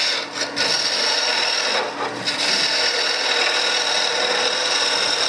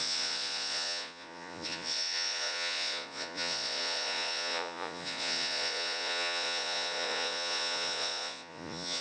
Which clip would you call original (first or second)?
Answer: first